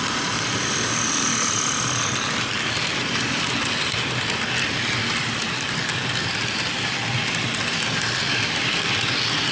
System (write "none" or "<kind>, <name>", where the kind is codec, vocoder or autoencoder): none